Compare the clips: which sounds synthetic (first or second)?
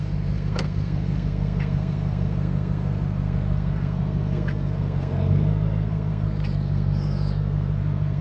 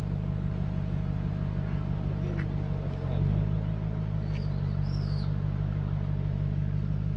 first